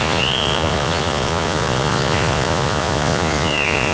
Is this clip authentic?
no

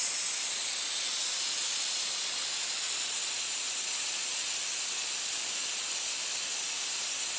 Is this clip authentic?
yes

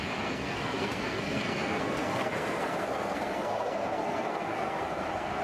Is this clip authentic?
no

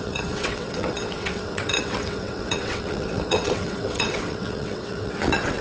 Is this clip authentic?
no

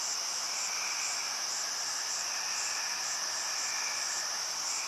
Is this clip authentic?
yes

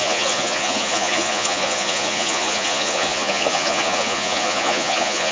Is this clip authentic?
no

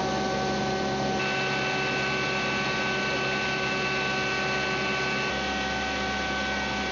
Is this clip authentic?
yes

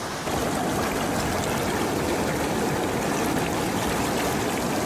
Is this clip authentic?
yes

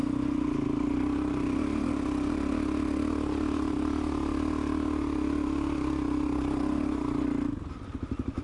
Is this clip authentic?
yes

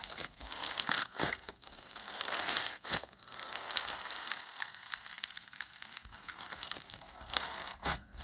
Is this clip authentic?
no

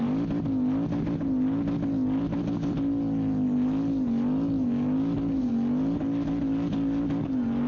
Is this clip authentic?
yes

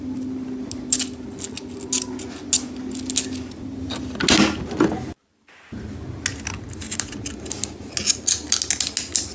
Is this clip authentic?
yes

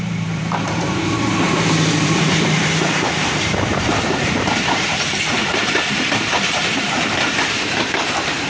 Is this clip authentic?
no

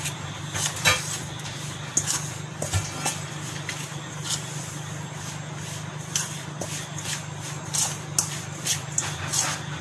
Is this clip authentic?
yes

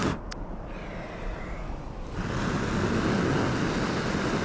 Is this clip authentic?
yes